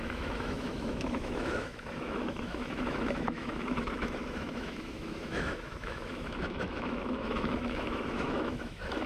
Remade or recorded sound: remade